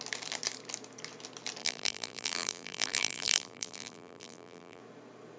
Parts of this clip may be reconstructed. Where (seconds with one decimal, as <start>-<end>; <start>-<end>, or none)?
1.6-4.8